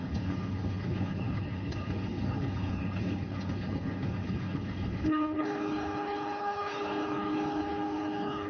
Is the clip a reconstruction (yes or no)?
yes